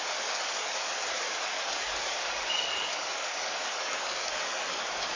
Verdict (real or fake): fake